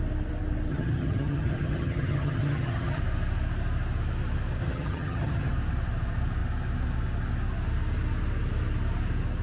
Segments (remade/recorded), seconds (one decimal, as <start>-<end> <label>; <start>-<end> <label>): 0.0-0.7 recorded; 0.7-3.0 remade; 3.0-4.6 recorded; 4.6-5.5 remade; 5.5-9.4 recorded